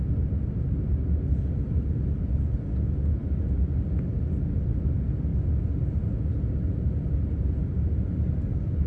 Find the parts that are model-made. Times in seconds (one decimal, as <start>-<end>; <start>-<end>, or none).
none